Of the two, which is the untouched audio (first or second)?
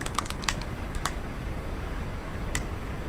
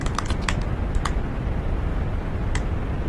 second